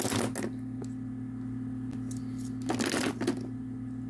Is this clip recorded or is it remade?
recorded